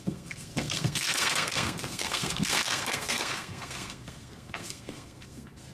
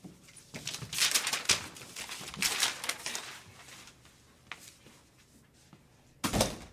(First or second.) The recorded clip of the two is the second